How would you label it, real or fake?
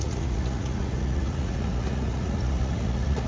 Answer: fake